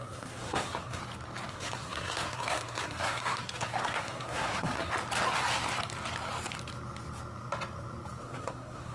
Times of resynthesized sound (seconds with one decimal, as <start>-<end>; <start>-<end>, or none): 0.0-1.0; 1.5-4.9; 8.2-8.9